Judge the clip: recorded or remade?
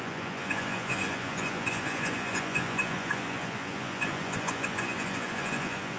remade